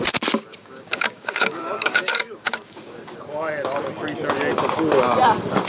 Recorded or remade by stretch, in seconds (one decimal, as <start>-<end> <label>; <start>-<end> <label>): 0.0-0.5 recorded; 0.5-3.2 remade; 3.2-5.7 recorded